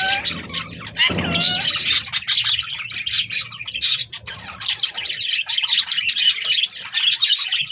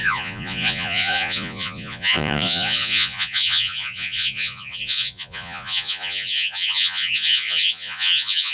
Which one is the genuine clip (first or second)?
first